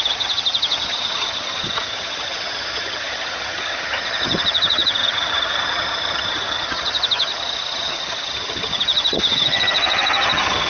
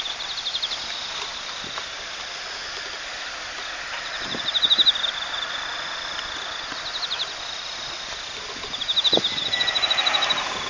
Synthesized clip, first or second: first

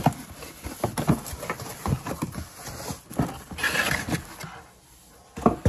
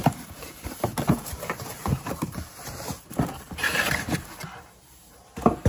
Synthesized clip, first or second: second